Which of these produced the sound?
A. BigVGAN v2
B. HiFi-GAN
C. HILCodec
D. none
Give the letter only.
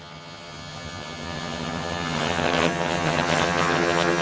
B